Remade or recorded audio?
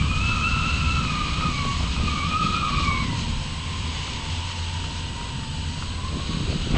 recorded